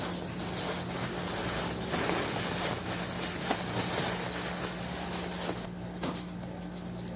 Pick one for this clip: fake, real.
real